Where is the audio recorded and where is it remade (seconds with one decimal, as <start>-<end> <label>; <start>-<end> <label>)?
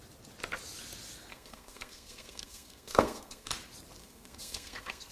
0.0-1.3 recorded; 1.3-3.5 remade; 3.5-4.0 recorded; 4.0-5.1 remade